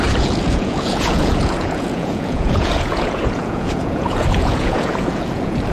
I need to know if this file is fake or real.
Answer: fake